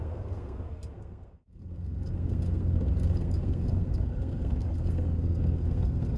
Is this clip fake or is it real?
fake